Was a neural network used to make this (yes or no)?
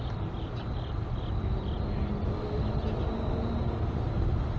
no